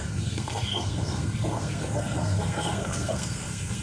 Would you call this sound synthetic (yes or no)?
yes